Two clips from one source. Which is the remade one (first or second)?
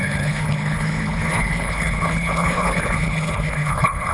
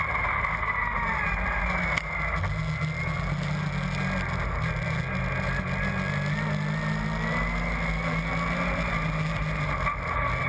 first